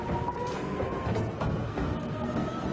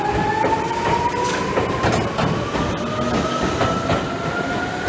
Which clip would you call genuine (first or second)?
second